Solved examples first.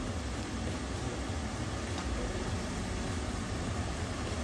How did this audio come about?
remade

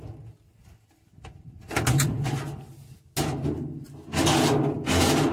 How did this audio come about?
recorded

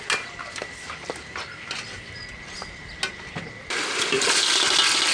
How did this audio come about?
recorded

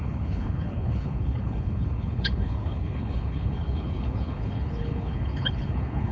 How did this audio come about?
remade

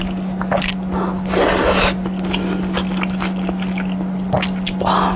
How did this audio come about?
recorded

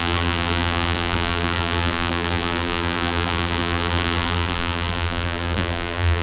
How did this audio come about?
remade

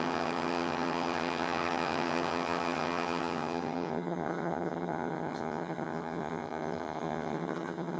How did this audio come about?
remade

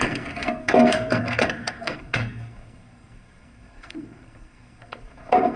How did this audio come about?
remade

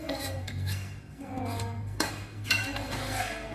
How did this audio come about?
remade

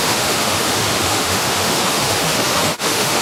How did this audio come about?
remade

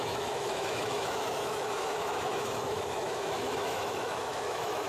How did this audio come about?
remade